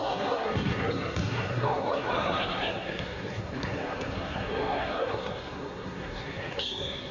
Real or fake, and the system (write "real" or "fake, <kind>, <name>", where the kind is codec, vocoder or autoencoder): fake, codec, SNAC